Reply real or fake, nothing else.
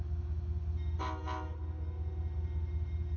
real